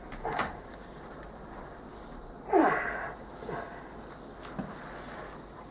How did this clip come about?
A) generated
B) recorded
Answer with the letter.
B